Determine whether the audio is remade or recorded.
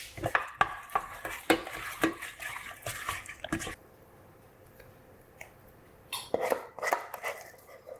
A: recorded